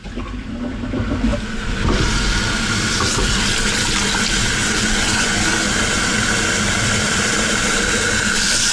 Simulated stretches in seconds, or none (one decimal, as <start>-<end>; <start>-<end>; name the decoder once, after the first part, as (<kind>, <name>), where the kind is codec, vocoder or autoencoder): 4.6-5.4 (vocoder, Vocos)

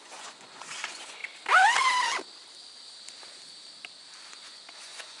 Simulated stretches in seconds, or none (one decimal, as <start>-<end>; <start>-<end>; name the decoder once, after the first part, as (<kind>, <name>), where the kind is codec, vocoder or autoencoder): 0.0-1.2 (vocoder, Vocos); 4.3-5.2